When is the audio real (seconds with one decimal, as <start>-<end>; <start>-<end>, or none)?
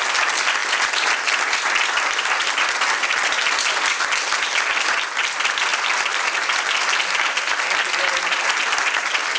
0.0-9.4